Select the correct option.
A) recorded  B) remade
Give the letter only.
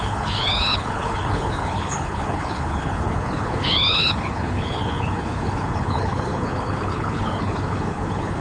B